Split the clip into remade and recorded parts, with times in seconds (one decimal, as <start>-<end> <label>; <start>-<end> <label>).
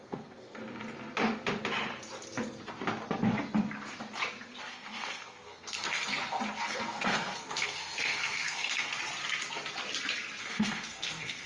0.0-0.6 remade; 0.6-4.6 recorded; 4.6-6.1 remade; 6.1-6.6 recorded; 6.6-9.0 remade; 9.0-10.4 recorded; 10.4-11.5 remade